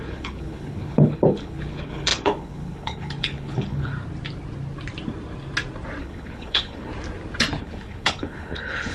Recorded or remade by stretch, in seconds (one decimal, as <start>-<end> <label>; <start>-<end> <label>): 0.0-3.9 remade; 3.9-6.0 recorded; 6.0-6.9 remade; 6.9-7.6 recorded; 7.6-8.9 remade